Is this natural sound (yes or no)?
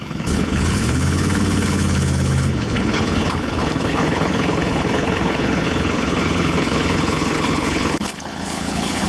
no